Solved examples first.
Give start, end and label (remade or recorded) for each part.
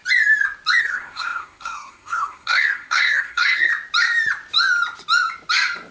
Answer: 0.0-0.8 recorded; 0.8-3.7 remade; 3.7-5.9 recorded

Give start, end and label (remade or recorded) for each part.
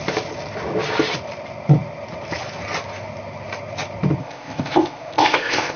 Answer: 0.0-4.2 recorded; 4.2-5.8 remade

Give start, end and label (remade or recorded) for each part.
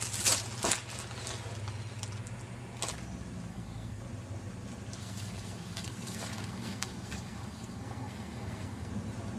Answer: 0.0-3.5 recorded; 3.5-4.0 remade; 4.0-5.0 recorded; 5.0-8.9 remade; 8.9-9.4 recorded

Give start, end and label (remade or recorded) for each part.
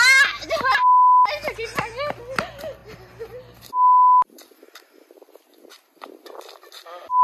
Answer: 0.0-7.2 recorded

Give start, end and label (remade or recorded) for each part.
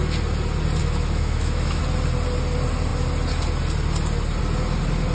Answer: 0.0-0.8 recorded; 0.8-1.8 remade; 1.8-5.1 recorded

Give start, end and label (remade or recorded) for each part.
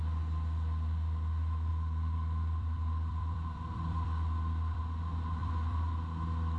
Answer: 0.0-1.7 recorded; 1.7-4.8 remade; 4.8-5.4 recorded; 5.4-5.9 remade; 5.9-6.6 recorded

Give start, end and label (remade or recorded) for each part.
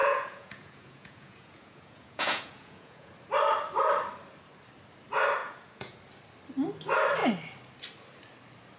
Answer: 0.0-3.1 remade; 3.1-5.4 recorded; 5.4-6.0 remade; 6.0-8.8 recorded